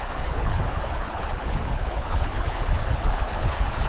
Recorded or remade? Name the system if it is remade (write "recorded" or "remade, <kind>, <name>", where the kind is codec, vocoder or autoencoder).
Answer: remade, codec, HILCodec